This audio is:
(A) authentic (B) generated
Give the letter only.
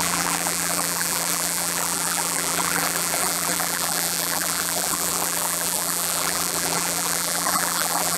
B